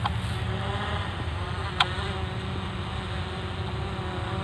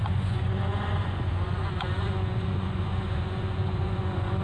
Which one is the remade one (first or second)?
second